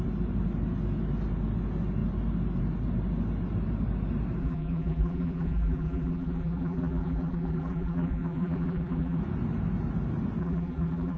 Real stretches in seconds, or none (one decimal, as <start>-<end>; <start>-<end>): 0.0-4.4; 9.2-10.4